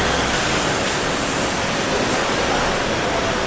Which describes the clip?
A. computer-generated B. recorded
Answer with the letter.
B